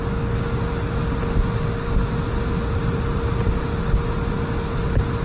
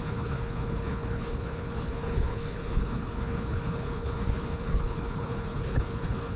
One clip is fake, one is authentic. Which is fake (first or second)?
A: second